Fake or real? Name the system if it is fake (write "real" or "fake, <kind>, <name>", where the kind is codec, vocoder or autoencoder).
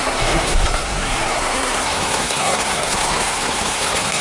fake, codec, SNAC